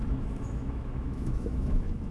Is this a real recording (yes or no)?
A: no